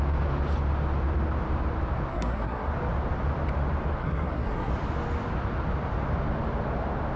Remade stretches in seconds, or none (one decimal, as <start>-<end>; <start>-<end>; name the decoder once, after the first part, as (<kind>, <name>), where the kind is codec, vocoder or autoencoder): 2.1-2.7 (codec, SNAC); 4.0-4.7